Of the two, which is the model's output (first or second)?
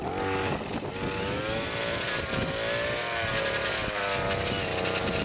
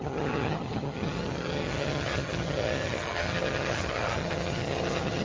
second